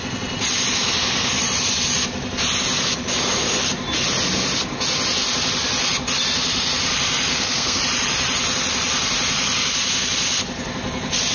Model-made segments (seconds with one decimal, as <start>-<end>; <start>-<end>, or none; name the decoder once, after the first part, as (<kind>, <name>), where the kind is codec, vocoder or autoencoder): 7.3-7.8 (codec, SNAC)